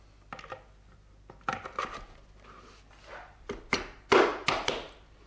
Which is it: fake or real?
real